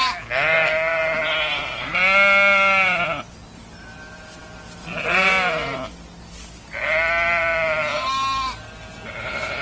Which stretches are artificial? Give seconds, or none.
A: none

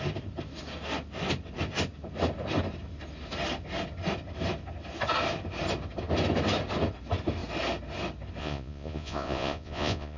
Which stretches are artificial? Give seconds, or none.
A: 8.4-10.2 (vocoder, Vocos)